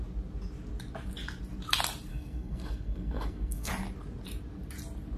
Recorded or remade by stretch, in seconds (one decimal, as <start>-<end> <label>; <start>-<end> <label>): 0.0-2.1 recorded; 2.1-3.7 remade; 3.7-5.2 recorded